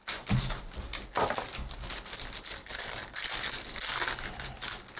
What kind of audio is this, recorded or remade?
recorded